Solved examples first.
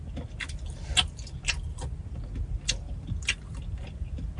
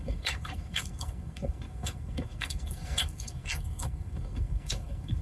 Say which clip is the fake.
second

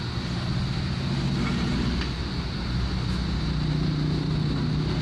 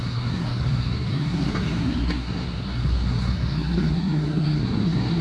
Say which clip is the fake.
second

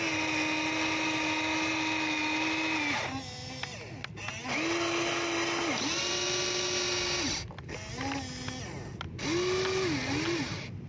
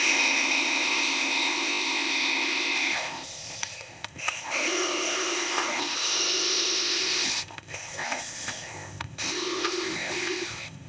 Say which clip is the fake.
second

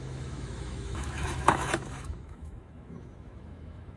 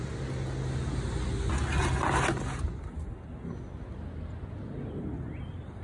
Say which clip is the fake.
first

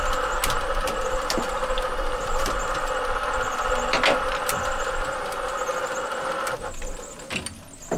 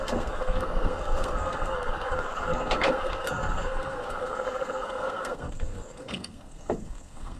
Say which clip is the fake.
second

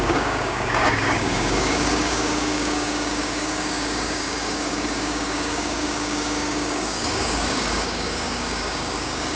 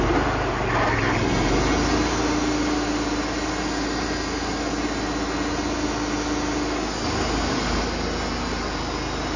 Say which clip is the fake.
first